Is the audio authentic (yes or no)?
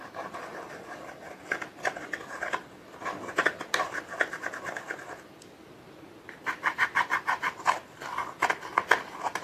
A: no